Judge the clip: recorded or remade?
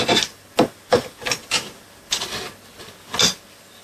recorded